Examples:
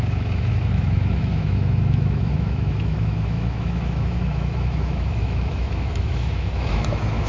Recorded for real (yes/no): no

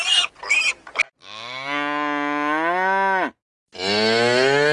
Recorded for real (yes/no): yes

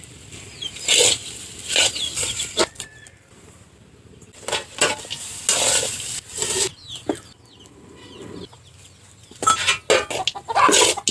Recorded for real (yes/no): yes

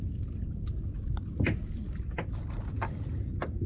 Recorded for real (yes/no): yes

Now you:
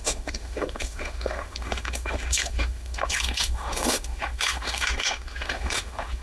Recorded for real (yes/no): no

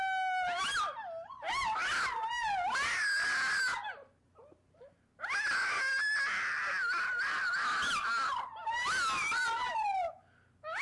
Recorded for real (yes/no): yes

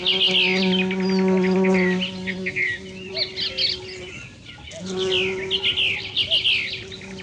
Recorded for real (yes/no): yes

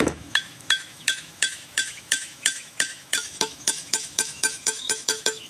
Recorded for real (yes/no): no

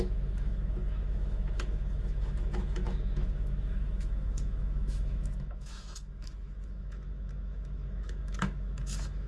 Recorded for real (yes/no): no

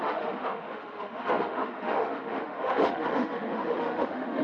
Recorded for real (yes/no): no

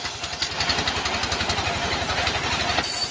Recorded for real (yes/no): yes